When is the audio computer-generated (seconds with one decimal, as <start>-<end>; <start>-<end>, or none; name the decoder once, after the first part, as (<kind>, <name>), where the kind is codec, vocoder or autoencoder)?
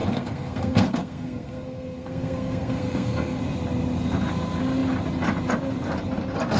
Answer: 0.0-3.4 (codec, SNAC)